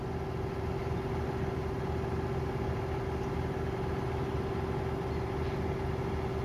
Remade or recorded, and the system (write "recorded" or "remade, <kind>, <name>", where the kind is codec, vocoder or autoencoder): recorded